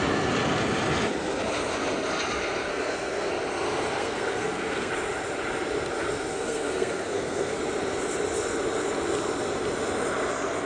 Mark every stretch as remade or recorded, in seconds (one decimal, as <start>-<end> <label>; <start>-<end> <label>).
0.0-2.7 recorded; 2.7-3.3 remade; 3.3-4.0 recorded; 4.0-4.9 remade; 4.9-6.3 recorded; 6.3-7.6 remade; 7.6-10.7 recorded